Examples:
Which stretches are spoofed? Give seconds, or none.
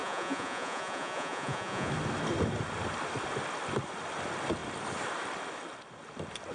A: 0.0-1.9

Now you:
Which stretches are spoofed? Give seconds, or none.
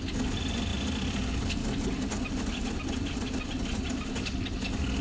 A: none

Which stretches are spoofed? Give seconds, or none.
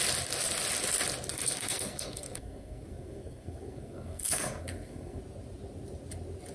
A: 1.3-5.2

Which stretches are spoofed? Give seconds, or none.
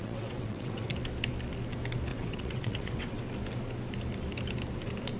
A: 0.0-0.9; 2.1-3.2